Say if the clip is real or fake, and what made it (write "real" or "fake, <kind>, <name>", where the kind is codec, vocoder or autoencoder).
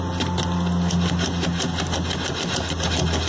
real